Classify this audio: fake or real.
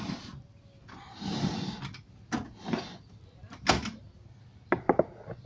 real